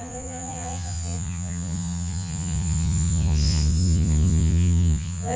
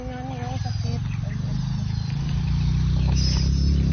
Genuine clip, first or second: second